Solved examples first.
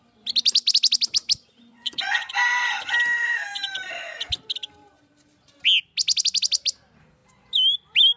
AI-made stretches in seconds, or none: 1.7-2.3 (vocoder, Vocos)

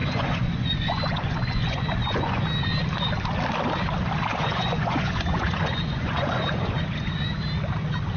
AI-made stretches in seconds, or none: 0.0-2.4 (vocoder, Vocos); 4.3-7.2

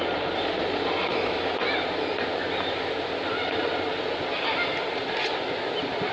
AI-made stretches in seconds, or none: 1.1-1.6 (autoencoder, DAC-VAE)

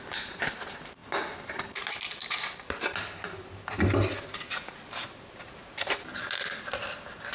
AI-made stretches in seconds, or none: none